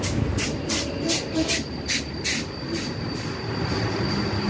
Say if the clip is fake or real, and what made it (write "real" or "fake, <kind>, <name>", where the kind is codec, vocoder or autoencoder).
real